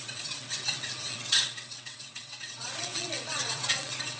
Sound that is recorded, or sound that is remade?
remade